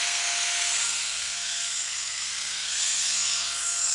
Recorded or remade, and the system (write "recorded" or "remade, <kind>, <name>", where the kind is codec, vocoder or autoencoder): remade, codec, SNAC